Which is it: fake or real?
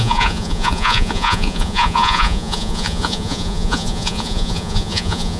fake